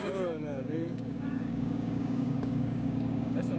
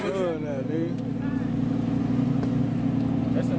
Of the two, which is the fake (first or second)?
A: first